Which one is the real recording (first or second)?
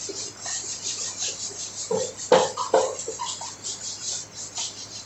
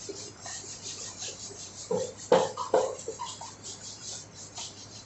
first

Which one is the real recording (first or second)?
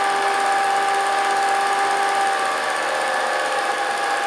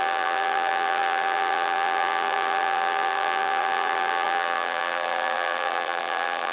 first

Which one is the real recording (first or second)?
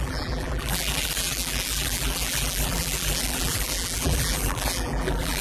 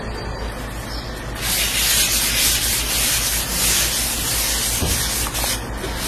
second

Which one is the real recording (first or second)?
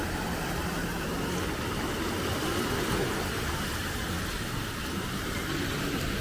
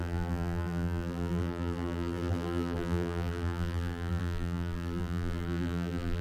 first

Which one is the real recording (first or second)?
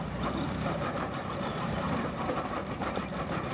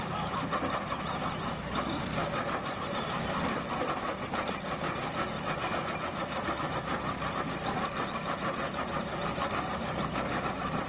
second